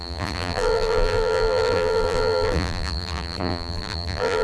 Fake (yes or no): yes